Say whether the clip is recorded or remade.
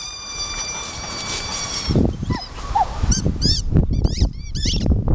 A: remade